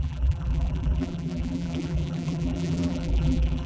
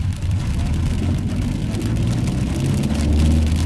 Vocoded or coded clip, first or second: first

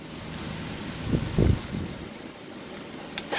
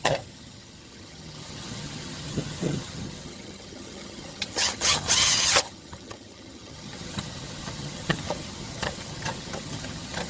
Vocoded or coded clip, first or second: second